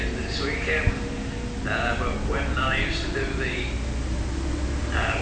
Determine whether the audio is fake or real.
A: real